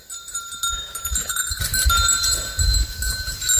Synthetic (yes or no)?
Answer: no